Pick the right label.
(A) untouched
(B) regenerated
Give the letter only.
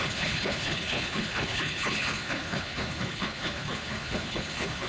B